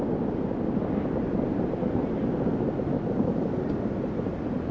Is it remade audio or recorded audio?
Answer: recorded